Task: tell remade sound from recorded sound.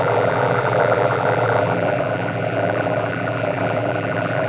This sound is remade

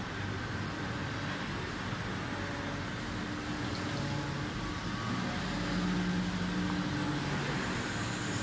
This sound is recorded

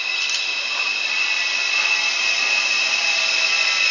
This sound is recorded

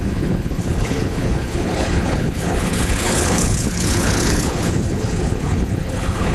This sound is remade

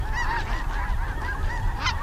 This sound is recorded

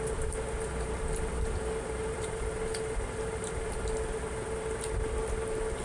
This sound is recorded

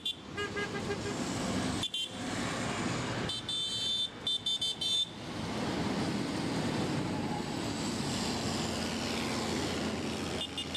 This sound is recorded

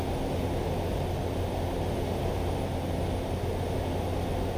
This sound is recorded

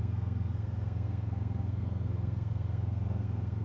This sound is remade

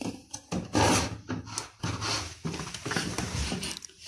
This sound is recorded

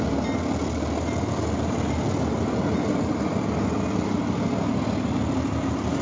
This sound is recorded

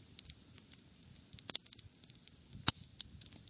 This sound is recorded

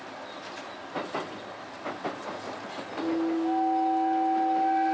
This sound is recorded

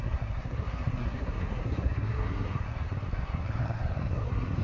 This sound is remade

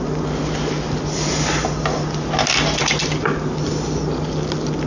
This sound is recorded